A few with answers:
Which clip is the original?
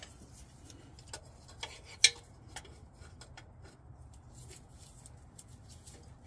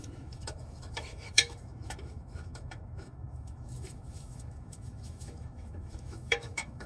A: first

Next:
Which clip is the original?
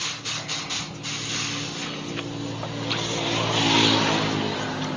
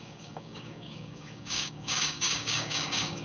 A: first